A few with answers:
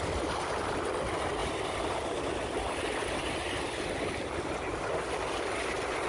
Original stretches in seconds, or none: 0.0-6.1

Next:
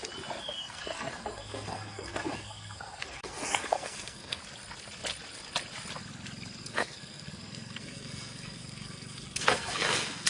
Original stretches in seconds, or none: 0.0-0.4; 4.4-6.6

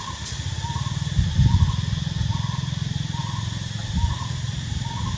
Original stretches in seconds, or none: 0.0-5.2

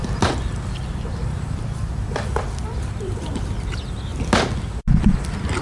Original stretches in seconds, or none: 3.4-5.6

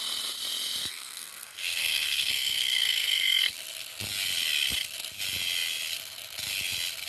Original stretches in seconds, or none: 0.0-0.8; 3.5-7.1